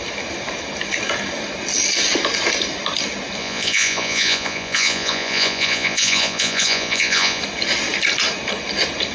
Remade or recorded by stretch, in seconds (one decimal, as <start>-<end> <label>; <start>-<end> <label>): 0.0-3.4 recorded; 3.4-7.4 remade; 7.4-9.1 recorded